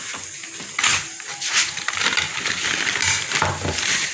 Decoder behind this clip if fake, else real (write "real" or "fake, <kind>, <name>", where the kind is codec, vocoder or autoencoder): real